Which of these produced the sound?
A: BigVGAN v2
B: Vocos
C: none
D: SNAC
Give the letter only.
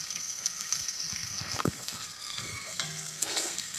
D